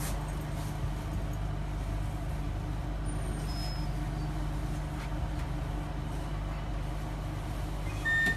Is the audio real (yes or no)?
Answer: yes